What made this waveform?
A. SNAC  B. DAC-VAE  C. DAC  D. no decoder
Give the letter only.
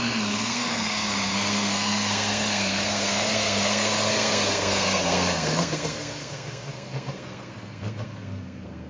A